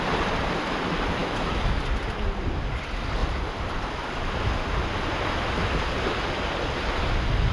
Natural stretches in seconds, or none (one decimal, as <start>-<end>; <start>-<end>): 0.0-1.2; 1.8-7.5